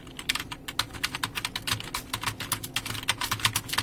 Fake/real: real